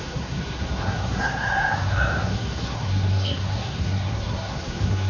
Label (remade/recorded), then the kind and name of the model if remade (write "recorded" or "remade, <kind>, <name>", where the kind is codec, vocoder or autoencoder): remade, codec, SNAC